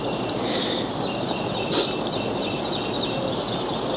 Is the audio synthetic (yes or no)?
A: no